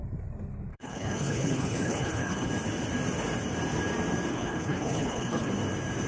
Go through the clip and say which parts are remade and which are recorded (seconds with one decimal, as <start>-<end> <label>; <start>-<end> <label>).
0.0-0.7 recorded; 0.7-2.5 remade; 2.5-4.3 recorded; 4.3-5.5 remade; 5.5-6.1 recorded

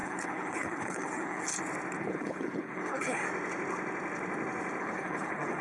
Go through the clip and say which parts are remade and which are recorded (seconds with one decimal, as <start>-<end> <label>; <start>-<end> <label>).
0.0-1.5 remade; 1.5-2.0 recorded; 2.0-3.2 remade; 3.2-4.8 recorded; 4.8-5.6 remade